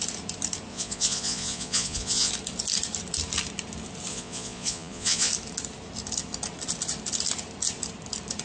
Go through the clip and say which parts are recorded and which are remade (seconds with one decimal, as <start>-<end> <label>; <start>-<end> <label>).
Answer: 0.0-0.7 recorded; 0.7-2.3 remade; 2.3-4.1 recorded; 4.1-5.3 remade; 5.3-8.4 recorded